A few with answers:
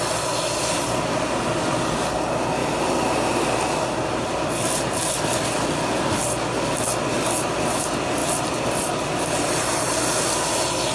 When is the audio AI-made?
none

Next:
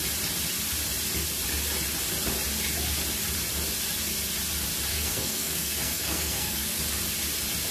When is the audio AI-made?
4.9-6.8 (codec, SNAC)

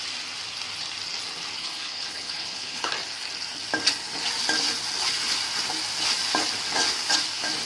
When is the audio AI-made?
1.6-2.9 (codec, HILCodec)

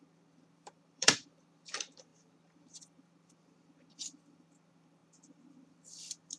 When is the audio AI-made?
0.0-6.4 (vocoder, BigVGAN v2)

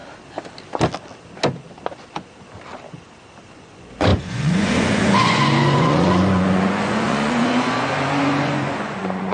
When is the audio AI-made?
3.5-9.3 (vocoder, Vocos)